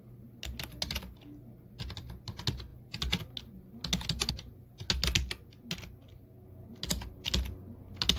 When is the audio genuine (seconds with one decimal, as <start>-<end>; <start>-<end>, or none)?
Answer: 0.0-8.2

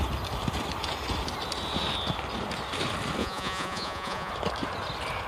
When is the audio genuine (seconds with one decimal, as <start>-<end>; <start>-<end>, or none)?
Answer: 0.0-3.2; 4.3-5.3

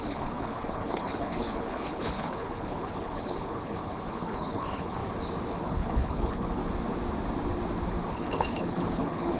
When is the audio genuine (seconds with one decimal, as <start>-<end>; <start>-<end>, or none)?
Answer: 5.0-5.6; 6.6-8.1

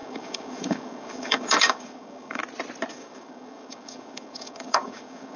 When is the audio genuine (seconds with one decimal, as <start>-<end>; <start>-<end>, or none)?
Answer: 2.4-2.9

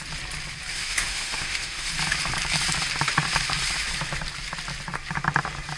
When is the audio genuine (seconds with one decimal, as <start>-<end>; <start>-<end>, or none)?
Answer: 0.0-0.7; 1.9-5.8

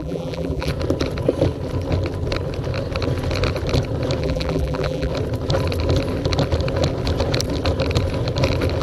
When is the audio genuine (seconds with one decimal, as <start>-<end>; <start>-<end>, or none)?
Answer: 0.7-4.2; 5.1-8.8